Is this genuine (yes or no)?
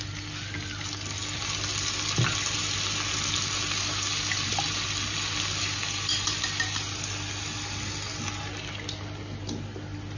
yes